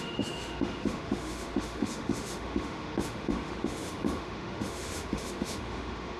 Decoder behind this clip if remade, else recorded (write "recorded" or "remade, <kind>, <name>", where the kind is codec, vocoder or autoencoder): remade, autoencoder, DAC-VAE